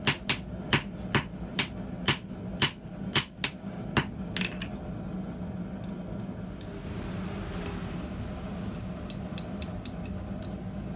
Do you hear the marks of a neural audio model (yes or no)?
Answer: no